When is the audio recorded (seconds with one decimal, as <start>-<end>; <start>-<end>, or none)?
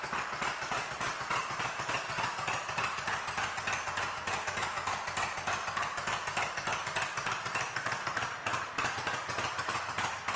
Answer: 0.0-10.4